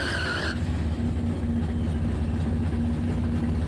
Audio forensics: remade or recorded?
recorded